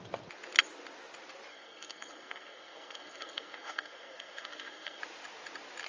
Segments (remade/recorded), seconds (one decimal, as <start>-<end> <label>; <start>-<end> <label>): 0.0-1.5 recorded; 1.5-5.0 remade; 5.0-5.9 recorded